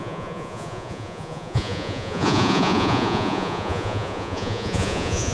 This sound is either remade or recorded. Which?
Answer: remade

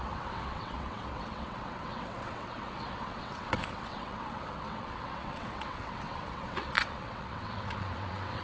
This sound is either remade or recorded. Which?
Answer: remade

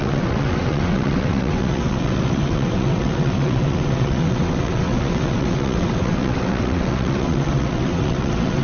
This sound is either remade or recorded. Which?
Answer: remade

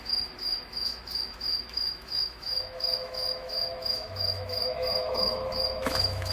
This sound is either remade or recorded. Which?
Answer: remade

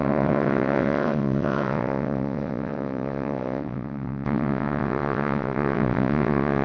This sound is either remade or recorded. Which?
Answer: remade